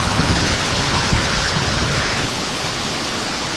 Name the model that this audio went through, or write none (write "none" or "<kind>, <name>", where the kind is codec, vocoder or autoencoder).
codec, HILCodec